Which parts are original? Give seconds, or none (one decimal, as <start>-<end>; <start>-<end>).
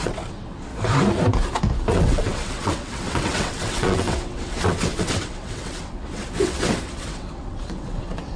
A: 0.7-1.9